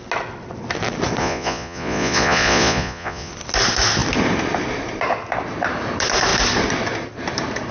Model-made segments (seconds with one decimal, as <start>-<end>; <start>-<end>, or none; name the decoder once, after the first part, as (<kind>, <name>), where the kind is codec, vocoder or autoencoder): 1.2-3.3 (vocoder, Vocos)